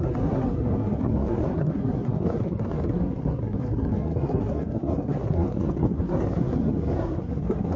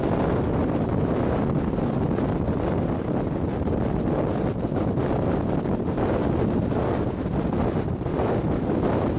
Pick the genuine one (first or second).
second